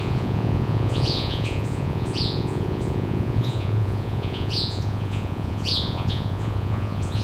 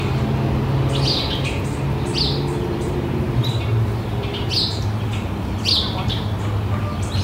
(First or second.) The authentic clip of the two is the second